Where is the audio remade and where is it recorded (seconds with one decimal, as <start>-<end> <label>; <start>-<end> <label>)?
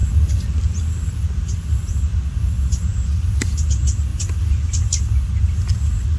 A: 0.0-2.9 recorded; 2.9-3.5 remade; 3.5-6.2 recorded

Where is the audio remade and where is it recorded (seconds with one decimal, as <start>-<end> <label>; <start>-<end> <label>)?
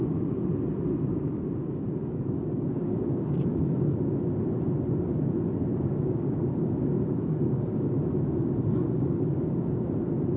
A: 0.0-1.6 recorded; 1.6-4.0 remade; 4.0-5.7 recorded; 5.7-9.9 remade; 9.9-10.4 recorded